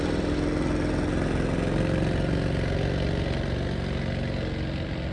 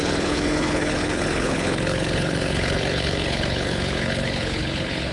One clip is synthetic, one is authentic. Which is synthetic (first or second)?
second